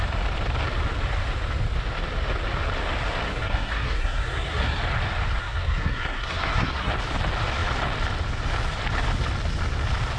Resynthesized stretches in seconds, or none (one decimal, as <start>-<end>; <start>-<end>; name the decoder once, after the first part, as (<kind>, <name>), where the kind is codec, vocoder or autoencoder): 3.3-4.8 (codec, SNAC); 5.4-6.9